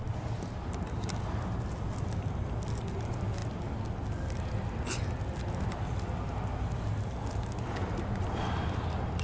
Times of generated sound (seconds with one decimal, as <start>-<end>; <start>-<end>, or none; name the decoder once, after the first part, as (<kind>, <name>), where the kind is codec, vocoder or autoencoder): none